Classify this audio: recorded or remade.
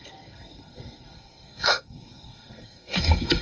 remade